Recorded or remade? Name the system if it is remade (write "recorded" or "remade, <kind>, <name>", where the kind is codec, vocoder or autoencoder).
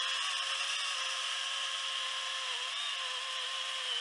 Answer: recorded